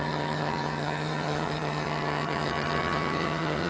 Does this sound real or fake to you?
fake